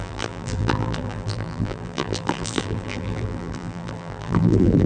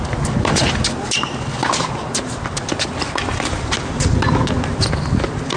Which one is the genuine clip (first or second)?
second